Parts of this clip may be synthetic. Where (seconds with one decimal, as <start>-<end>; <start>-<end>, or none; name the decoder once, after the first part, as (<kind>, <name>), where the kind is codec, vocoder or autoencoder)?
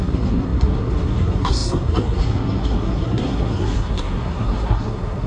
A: 0.0-5.3 (codec, SNAC)